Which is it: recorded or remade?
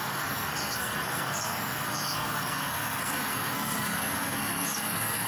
remade